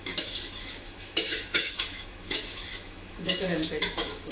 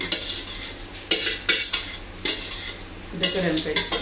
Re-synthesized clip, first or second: first